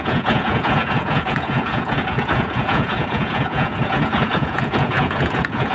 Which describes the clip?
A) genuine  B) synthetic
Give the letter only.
B